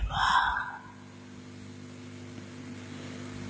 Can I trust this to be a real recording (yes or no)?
yes